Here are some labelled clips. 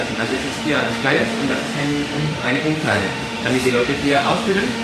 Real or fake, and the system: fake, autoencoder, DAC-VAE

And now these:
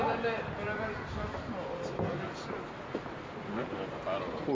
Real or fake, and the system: real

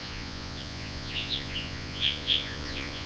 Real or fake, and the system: fake, vocoder, Vocos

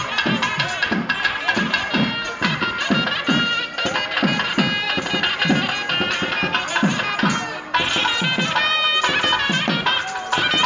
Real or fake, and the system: real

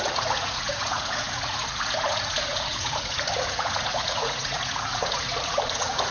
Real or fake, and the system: fake, vocoder, Vocos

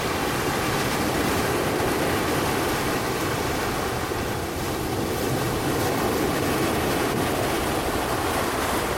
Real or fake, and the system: real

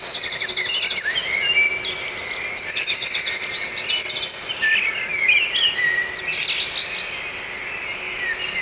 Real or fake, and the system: real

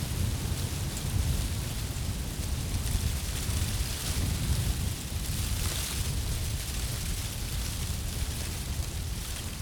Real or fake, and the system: real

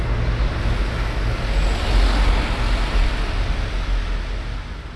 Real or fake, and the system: real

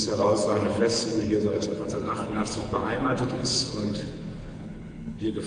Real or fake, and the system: fake, codec, HILCodec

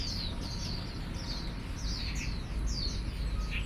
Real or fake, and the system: real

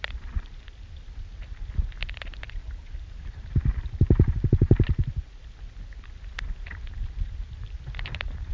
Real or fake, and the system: fake, vocoder, BigVGAN v2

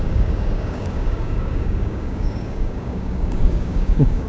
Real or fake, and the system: fake, codec, DAC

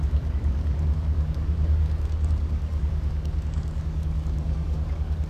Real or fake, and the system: fake, codec, DAC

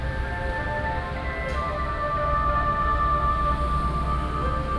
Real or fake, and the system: real